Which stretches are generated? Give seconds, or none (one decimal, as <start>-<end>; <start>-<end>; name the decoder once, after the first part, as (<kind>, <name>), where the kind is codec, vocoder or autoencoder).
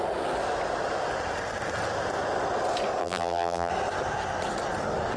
3.0-3.7 (vocoder, BigVGAN v2)